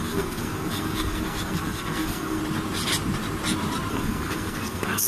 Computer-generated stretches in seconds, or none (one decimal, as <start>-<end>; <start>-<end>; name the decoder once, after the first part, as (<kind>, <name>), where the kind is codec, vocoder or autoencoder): 0.0-2.4 (codec, SNAC); 3.9-5.1